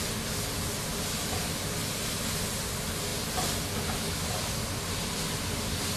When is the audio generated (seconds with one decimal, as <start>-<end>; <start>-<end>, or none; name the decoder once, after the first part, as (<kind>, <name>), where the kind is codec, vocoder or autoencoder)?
none